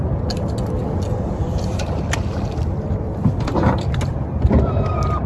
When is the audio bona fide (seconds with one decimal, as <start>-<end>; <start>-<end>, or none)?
0.0-0.8; 4.0-5.3